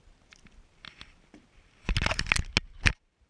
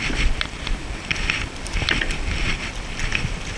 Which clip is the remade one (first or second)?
second